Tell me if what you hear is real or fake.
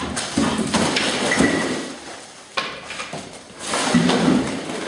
real